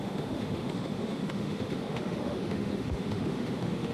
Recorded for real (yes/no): no